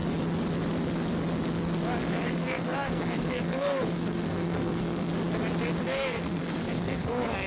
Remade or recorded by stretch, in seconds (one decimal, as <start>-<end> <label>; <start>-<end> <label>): 0.0-2.0 recorded; 2.0-5.1 remade; 5.1-5.8 recorded; 5.8-7.5 remade